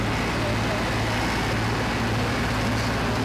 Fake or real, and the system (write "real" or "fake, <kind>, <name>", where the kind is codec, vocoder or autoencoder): real